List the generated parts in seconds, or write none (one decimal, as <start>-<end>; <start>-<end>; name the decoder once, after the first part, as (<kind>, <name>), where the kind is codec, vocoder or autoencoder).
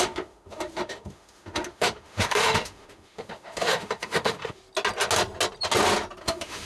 0.0-4.6 (autoencoder, DAC-VAE); 6.2-6.7